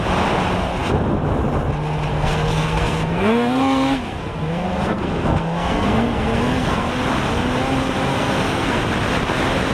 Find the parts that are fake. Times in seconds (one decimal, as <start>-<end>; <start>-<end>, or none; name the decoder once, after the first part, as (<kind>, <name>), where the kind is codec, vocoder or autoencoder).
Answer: 2.1-6.9 (codec, SNAC); 8.1-8.8